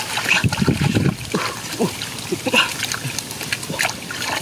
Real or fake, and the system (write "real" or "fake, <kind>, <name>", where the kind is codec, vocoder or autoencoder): fake, vocoder, BigVGAN v2